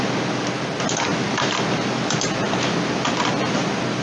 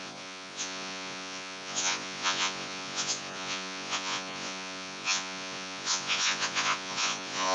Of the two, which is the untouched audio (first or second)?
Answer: first